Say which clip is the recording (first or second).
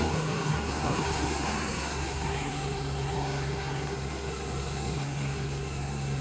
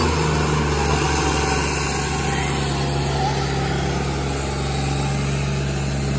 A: second